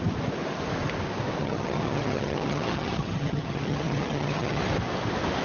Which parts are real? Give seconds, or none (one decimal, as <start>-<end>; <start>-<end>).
0.0-1.4; 4.6-5.4